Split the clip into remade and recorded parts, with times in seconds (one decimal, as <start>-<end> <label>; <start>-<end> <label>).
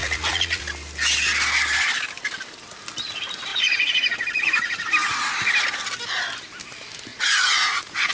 0.0-0.6 remade; 0.6-3.5 recorded; 3.5-4.9 remade; 4.9-7.1 recorded; 7.1-8.1 remade